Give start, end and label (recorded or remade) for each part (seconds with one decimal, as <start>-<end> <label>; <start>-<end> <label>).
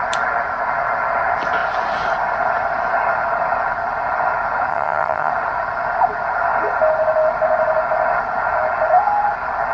0.0-4.7 recorded; 4.7-5.3 remade; 5.3-9.7 recorded